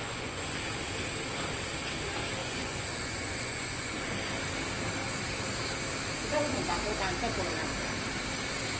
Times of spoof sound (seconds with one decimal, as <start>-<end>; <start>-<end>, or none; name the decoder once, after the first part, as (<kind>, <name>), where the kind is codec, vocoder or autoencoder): 0.0-0.6 (vocoder, Vocos); 2.4-4.1